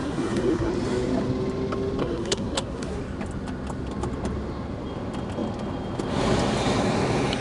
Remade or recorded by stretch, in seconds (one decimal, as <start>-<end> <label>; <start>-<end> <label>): 0.0-0.7 remade; 0.7-2.0 recorded; 2.0-3.0 remade; 3.0-7.4 recorded